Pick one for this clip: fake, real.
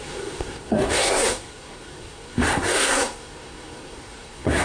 fake